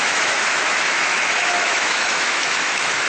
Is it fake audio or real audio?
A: fake